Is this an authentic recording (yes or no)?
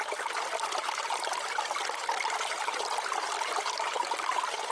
yes